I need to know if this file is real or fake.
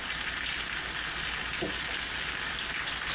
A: real